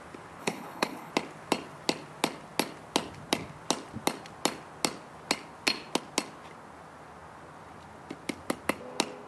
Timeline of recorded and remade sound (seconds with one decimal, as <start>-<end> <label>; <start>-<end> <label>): 0.0-0.4 recorded; 0.4-1.1 remade; 1.1-9.3 recorded